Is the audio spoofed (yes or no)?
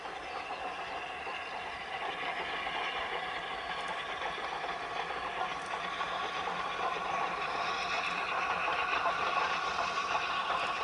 no